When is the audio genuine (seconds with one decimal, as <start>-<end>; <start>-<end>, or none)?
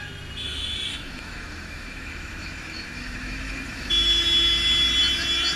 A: 0.0-0.9; 3.9-5.6